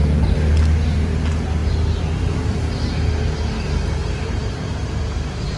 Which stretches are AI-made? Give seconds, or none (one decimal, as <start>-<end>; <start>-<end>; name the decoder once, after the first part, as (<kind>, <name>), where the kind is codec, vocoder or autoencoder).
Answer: 1.6-2.3 (vocoder, BigVGAN v2); 4.0-4.7